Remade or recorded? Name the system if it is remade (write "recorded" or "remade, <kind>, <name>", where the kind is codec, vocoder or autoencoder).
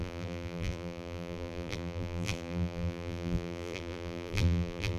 remade, vocoder, BigVGAN v2